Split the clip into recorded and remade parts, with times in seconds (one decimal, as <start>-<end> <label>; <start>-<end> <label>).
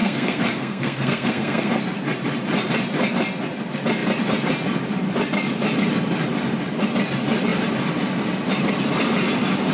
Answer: 0.0-1.8 remade; 1.8-9.7 recorded